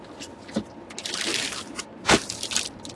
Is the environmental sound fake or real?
real